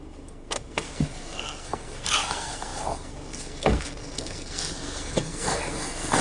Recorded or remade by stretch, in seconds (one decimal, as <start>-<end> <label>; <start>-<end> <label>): 0.0-6.2 remade